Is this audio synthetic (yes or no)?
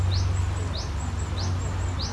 no